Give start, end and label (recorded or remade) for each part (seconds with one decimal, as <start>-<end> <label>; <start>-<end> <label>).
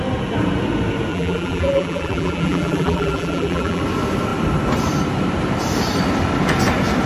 0.0-1.1 recorded; 1.1-3.8 remade; 3.8-7.1 recorded